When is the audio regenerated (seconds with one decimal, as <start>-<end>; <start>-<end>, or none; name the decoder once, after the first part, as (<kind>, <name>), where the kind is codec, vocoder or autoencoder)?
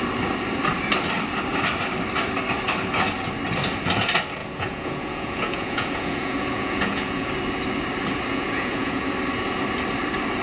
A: 4.4-7.3 (vocoder, Vocos); 8.3-9.1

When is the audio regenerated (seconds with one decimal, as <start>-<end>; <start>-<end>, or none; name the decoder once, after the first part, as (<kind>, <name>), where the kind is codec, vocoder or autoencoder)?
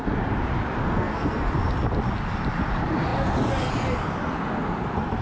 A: 0.8-1.5 (codec, SNAC)